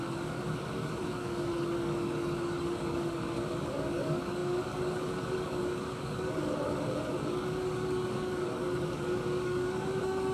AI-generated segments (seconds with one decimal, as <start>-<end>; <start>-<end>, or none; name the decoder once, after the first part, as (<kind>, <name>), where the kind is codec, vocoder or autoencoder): 0.0-10.3 (codec, DAC)